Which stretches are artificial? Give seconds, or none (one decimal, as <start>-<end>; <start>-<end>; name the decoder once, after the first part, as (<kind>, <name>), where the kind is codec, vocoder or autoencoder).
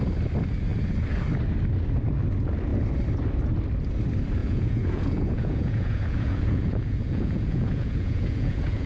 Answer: 4.4-8.9 (vocoder, Vocos)